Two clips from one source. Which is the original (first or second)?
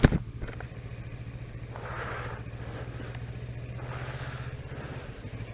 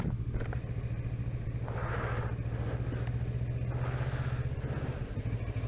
second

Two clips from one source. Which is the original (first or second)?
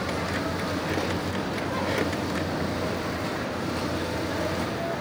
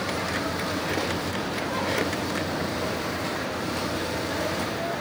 first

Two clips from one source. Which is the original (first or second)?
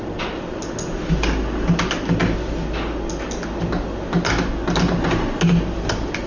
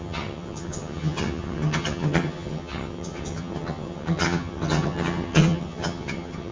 first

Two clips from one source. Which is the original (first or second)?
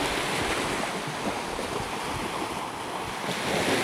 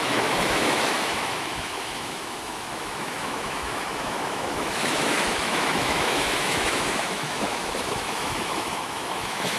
first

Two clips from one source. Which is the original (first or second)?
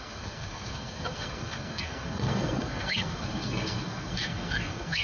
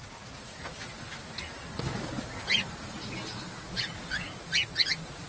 second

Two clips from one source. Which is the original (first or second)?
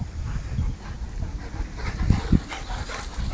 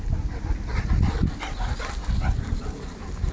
second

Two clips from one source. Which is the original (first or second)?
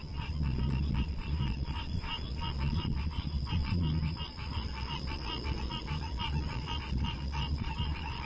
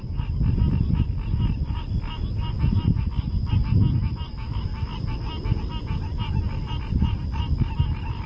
second